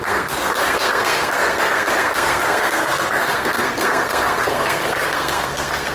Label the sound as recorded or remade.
remade